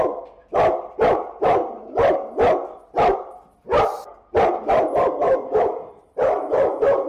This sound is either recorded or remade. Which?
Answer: recorded